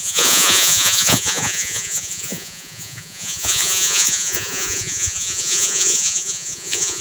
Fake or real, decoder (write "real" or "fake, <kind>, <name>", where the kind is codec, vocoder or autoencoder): fake, vocoder, Vocos